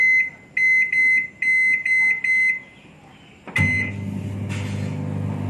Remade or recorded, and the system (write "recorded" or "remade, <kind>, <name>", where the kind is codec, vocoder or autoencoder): recorded